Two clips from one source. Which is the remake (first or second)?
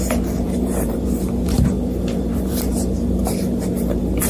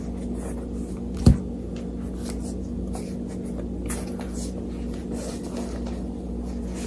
first